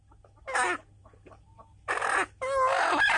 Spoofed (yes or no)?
no